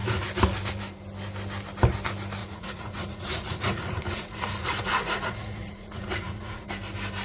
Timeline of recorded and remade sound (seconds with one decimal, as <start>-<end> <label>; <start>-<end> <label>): 0.0-2.4 recorded; 2.4-6.7 remade; 6.7-7.2 recorded